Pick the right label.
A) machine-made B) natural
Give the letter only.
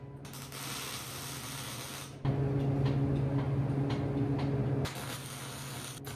B